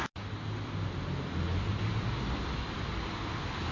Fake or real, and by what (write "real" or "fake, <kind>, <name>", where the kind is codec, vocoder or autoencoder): real